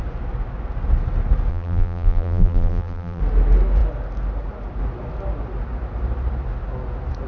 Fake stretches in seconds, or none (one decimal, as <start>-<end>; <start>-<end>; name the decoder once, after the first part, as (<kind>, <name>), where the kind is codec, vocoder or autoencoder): 1.5-3.2 (vocoder, BigVGAN v2)